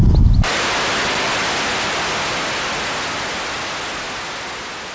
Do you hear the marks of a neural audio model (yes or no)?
no